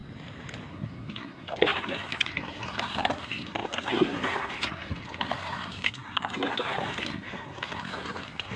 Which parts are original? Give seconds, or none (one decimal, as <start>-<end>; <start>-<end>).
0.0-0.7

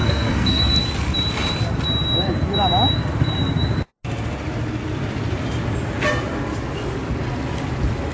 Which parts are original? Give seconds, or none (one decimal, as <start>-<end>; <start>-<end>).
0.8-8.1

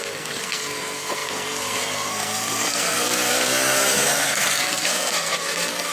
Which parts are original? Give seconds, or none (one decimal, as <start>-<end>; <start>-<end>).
none

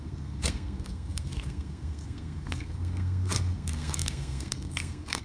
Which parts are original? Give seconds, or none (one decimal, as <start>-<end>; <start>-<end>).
none

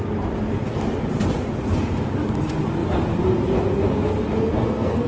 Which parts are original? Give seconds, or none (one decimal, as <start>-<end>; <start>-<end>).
0.0-4.5

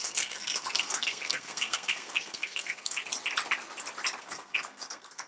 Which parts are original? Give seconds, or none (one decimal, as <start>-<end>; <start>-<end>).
3.0-4.2

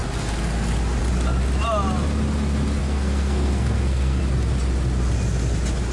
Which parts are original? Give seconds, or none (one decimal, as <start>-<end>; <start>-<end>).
0.0-2.8; 4.2-5.9

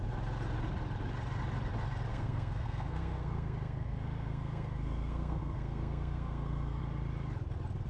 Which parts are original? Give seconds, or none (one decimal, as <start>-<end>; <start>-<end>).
0.0-2.1; 6.8-7.9